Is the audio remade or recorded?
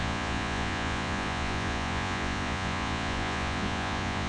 remade